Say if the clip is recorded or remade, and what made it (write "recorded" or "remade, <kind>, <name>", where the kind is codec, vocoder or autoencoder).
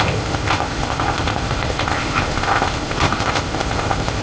remade, codec, ZipCodec